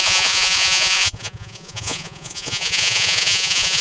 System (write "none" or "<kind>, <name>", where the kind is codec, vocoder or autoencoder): vocoder, Vocos